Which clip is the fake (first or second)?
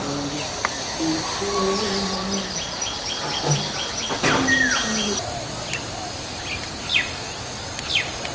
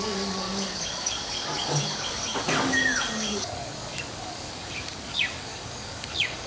second